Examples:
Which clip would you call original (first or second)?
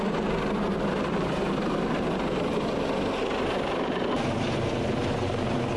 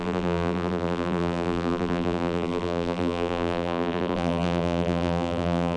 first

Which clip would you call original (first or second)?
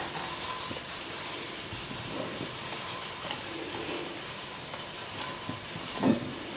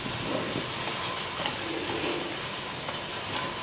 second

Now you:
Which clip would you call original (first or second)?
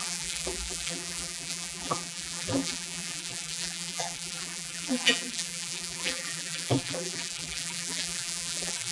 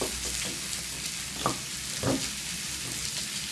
second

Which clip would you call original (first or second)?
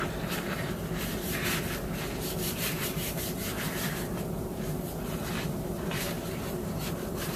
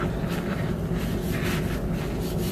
second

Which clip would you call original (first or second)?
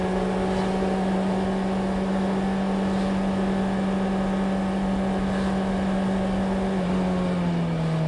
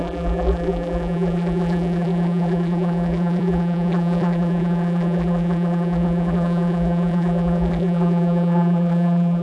first